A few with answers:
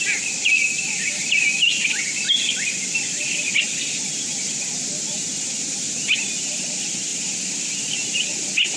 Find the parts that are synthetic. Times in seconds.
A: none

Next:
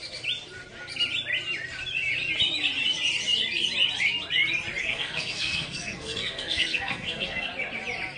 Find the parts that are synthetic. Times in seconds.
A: 4.8-7.5 (codec, SNAC)

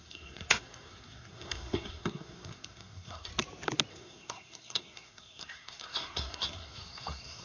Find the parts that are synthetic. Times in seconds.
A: 0.0-3.3 (codec, SNAC); 3.9-7.4

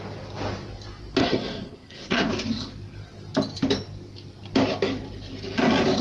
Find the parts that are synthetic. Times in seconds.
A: 1.2-2.3 (codec, SNAC)

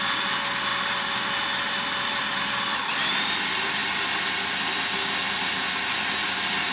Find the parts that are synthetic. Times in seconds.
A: none

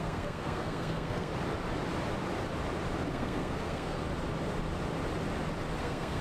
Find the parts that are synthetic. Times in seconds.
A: 0.0-1.3 (codec, SNAC); 3.1-4.0; 5.8-6.2